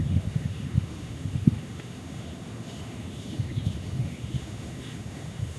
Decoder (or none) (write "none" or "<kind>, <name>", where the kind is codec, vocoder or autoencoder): autoencoder, DAC-VAE